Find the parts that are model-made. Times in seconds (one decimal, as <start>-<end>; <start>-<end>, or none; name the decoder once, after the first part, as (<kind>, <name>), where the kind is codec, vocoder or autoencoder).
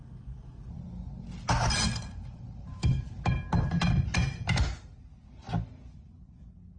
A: 2.8-3.3 (autoencoder, DAC-VAE)